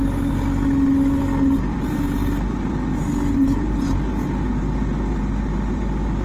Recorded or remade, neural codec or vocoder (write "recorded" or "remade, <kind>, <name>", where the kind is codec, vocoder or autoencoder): recorded